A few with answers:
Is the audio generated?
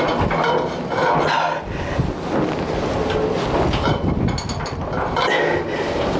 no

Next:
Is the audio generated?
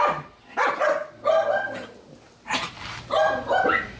no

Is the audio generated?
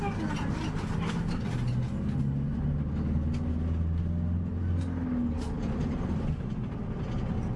no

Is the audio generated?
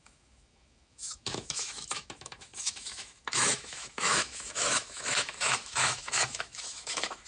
yes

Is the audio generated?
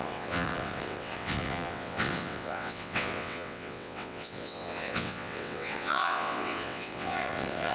yes